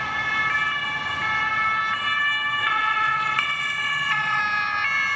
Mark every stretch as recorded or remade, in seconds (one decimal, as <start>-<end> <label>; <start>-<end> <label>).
0.0-2.6 recorded; 2.6-4.4 remade; 4.4-5.2 recorded